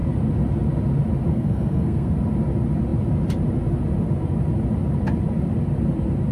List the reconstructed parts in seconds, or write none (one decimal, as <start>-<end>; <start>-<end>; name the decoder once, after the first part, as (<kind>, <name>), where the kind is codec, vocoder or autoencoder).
1.3-2.1 (codec, SNAC)